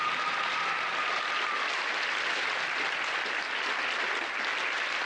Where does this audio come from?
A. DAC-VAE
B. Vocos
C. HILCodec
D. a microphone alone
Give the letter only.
D